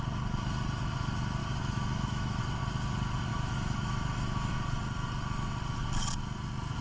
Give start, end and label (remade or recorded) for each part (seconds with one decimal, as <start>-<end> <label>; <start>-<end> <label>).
0.0-1.4 recorded; 1.4-2.4 remade; 2.4-3.3 recorded; 3.3-4.5 remade; 4.5-6.8 recorded